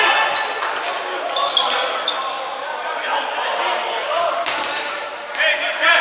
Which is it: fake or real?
real